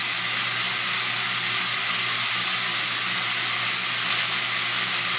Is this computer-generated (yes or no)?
no